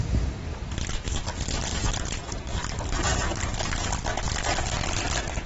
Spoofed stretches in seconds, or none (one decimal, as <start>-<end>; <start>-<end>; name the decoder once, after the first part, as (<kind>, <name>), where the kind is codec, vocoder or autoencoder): 1.7-3.6 (vocoder, BigVGAN v2)